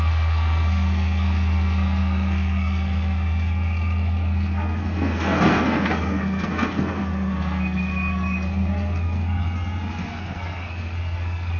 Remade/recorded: remade